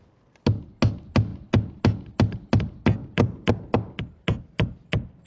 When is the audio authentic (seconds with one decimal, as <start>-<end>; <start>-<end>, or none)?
0.0-3.0; 3.5-5.3